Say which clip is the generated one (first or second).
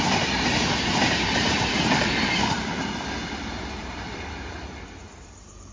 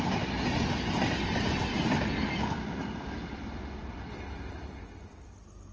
first